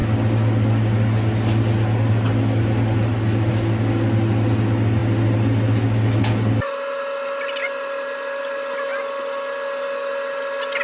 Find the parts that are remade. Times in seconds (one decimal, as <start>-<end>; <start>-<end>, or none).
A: none